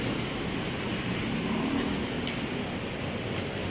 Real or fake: real